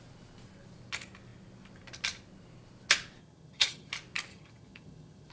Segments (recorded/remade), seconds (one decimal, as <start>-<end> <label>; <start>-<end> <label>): 0.0-3.2 recorded; 3.2-3.9 remade; 3.9-4.3 recorded; 4.3-5.3 remade